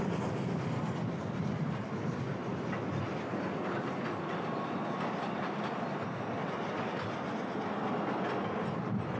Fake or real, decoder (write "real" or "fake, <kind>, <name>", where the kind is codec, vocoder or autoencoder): real